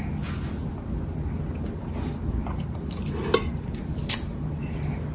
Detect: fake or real real